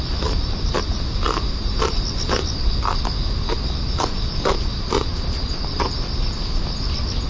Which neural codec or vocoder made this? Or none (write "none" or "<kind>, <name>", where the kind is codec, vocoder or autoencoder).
none